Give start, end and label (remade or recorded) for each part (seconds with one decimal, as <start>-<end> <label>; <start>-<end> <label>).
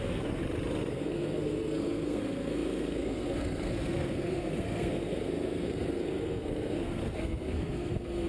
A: 0.0-0.4 remade; 0.4-0.9 recorded; 0.9-8.3 remade